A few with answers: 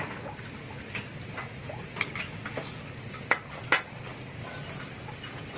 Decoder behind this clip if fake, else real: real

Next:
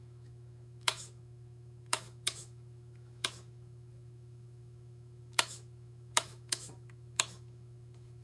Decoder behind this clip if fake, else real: fake, autoencoder, DAC-VAE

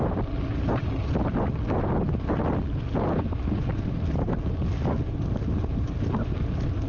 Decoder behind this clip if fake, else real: real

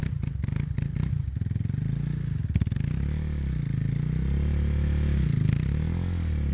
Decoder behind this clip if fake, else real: real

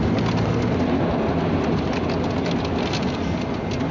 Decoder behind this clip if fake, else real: real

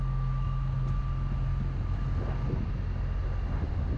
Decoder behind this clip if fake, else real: real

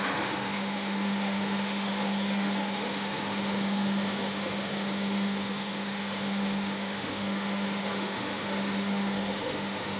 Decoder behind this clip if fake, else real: fake, autoencoder, DAC-VAE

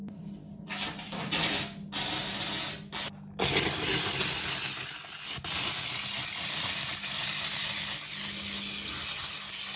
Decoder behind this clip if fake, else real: real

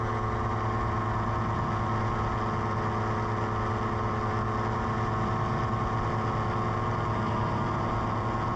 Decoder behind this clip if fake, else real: real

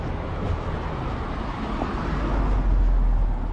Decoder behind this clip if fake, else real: real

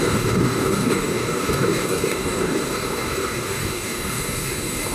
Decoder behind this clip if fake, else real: fake, codec, DAC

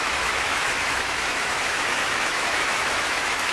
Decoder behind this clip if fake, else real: fake, autoencoder, DAC-VAE